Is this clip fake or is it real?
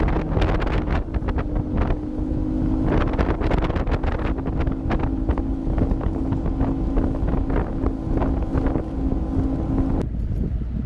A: real